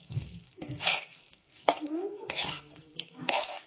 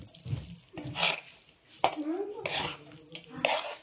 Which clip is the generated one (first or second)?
first